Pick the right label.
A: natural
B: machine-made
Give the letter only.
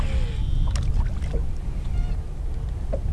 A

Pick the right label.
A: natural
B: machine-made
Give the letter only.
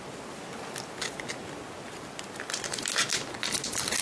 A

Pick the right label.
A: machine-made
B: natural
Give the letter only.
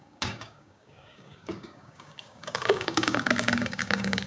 A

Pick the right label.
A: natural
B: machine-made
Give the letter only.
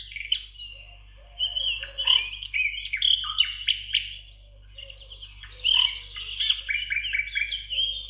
A